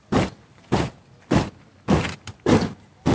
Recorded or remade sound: recorded